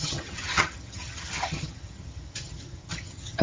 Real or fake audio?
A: fake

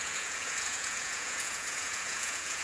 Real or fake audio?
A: fake